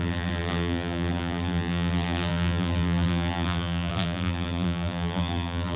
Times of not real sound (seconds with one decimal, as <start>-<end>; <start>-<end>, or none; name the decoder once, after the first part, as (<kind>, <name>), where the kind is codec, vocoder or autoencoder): 0.0-5.8 (vocoder, BigVGAN v2)